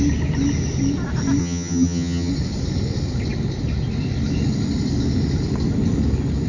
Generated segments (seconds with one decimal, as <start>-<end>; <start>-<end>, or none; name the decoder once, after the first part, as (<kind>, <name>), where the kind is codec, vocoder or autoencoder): 1.4-2.3 (vocoder, HiFi-GAN)